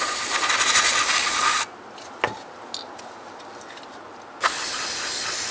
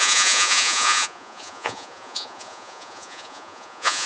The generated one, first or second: second